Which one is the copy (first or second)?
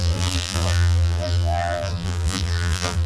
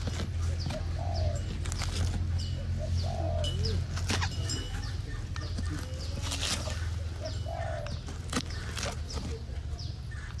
first